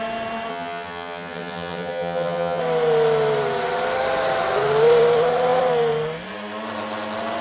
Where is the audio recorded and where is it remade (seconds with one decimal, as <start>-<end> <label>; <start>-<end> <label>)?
0.0-0.5 recorded; 0.5-2.6 remade; 2.6-7.4 recorded